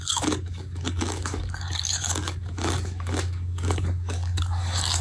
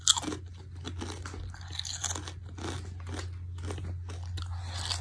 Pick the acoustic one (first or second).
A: second